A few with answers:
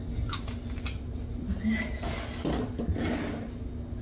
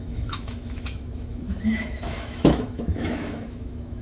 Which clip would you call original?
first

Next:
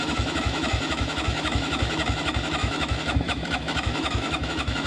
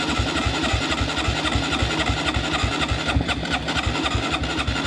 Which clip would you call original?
second